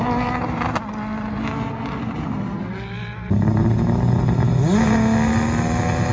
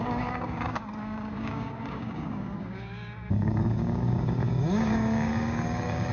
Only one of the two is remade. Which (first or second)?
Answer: second